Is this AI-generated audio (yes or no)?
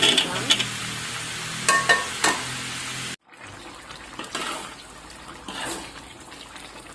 no